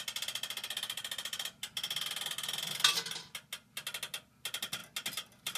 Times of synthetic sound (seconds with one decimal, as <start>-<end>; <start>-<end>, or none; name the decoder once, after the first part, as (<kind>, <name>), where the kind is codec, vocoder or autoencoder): none